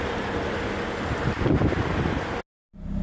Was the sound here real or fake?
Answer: real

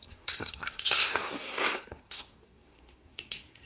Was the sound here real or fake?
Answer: fake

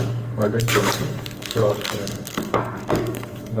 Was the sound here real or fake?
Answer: fake